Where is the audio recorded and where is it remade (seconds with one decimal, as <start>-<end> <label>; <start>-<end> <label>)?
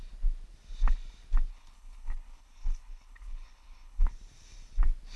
0.0-1.5 recorded; 1.5-4.1 remade; 4.1-5.2 recorded